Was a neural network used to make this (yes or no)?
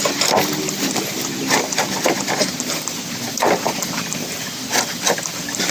no